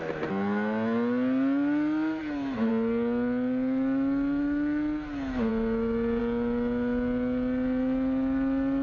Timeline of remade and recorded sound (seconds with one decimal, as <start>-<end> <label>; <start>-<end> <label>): 0.0-8.8 recorded